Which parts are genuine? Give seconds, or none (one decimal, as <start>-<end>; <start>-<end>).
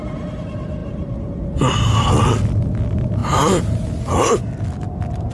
0.0-5.3